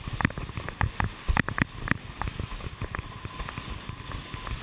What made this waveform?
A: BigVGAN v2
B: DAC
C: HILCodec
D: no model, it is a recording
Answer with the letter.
D